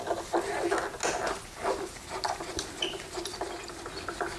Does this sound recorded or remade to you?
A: recorded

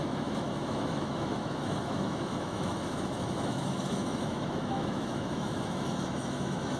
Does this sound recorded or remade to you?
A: remade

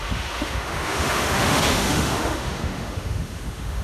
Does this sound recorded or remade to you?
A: remade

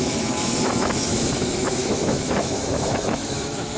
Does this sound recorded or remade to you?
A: remade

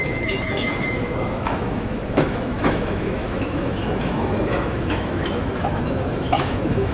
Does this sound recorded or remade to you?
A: remade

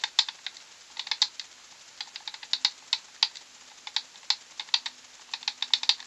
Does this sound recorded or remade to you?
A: recorded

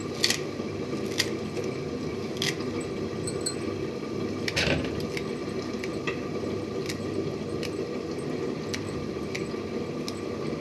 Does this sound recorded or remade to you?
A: recorded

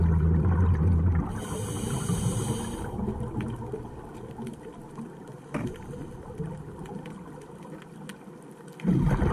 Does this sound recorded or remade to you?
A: recorded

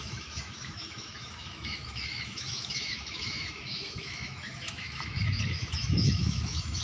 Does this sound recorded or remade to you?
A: remade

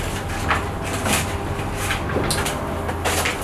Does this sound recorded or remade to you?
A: recorded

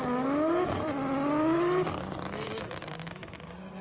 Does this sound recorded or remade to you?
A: recorded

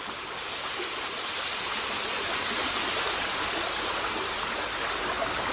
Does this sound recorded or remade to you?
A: recorded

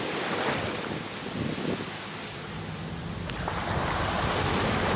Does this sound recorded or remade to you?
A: recorded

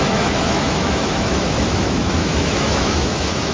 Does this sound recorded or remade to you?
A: remade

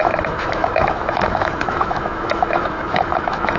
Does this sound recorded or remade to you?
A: remade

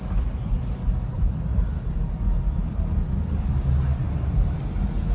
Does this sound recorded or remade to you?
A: recorded